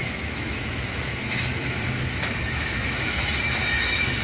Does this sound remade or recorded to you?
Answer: remade